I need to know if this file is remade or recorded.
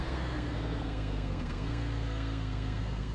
remade